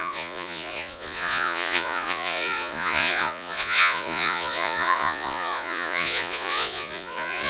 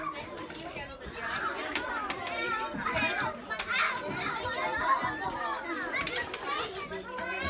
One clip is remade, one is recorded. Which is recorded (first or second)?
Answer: second